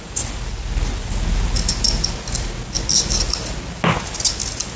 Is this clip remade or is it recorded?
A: recorded